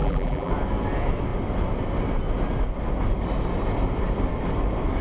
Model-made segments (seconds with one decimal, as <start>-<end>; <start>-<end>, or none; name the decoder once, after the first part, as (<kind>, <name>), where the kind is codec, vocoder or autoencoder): 0.0-0.5 (vocoder, BigVGAN v2)